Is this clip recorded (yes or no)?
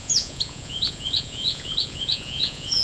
no